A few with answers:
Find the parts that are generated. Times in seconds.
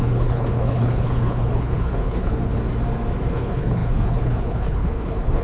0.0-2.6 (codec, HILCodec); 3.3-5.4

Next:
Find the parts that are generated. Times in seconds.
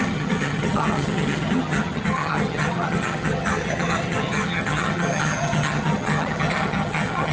0.0-7.3 (vocoder, HiFi-GAN)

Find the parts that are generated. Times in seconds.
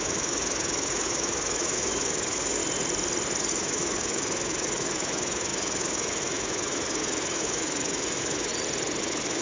0.0-2.6 (autoencoder, DAC-VAE); 3.5-8.5; 9.0-9.4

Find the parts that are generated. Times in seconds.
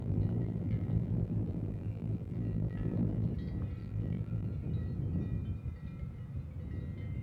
0.0-3.3 (vocoder, BigVGAN v2); 3.8-4.5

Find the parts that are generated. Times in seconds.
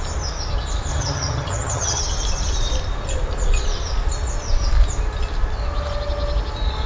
0.9-2.0 (vocoder, HiFi-GAN)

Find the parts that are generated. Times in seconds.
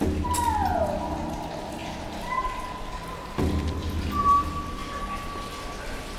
none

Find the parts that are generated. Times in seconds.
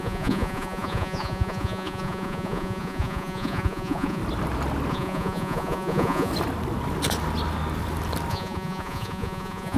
0.0-4.2 (vocoder, Vocos); 4.9-6.3; 8.3-9.8